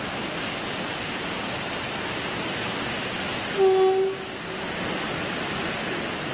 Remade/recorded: recorded